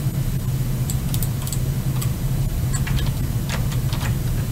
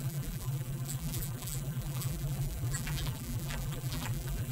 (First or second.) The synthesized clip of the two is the second